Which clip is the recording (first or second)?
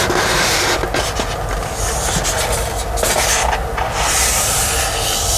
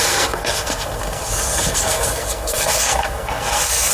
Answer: first